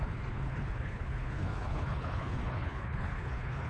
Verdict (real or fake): fake